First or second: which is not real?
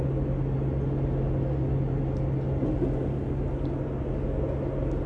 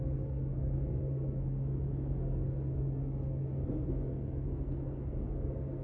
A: second